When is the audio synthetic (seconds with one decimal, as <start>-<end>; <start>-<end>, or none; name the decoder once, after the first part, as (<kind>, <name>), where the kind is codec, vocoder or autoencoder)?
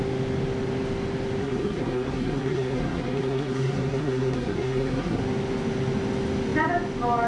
1.4-5.2 (codec, SNAC)